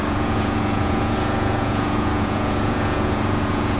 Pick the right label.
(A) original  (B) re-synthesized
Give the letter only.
B